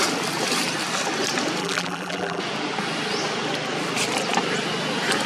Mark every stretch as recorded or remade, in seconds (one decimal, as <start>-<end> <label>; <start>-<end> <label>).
0.0-1.6 recorded; 1.6-2.4 remade; 2.4-5.3 recorded